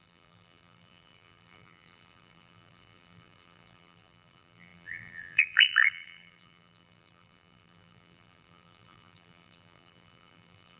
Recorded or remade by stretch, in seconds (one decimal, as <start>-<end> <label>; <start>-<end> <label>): 0.0-10.8 remade